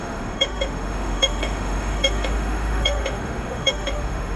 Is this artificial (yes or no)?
yes